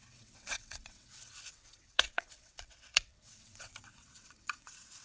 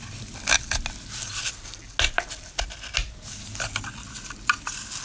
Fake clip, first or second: first